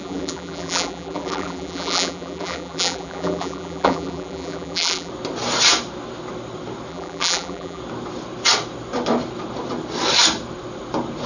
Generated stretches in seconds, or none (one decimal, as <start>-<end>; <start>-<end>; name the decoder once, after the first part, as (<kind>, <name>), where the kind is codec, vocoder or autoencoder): 0.0-5.1 (vocoder, BigVGAN v2); 6.9-7.8